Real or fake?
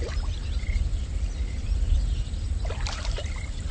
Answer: real